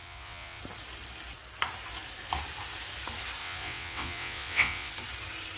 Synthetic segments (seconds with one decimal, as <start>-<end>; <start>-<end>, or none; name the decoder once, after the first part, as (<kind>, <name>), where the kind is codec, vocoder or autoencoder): 0.0-0.6 (vocoder, WaveNeXt); 3.4-4.9